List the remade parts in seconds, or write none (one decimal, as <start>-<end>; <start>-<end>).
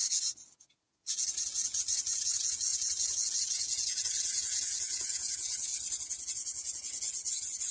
0.0-5.7; 6.2-7.7